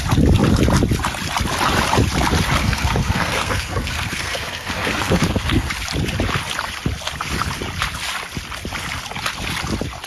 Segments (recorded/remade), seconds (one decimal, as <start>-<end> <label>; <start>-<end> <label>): 0.0-2.6 recorded; 2.6-5.7 remade; 5.7-10.1 recorded